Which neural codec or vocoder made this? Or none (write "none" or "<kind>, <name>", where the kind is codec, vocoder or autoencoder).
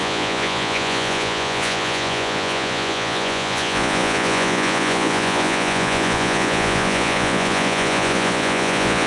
vocoder, Vocos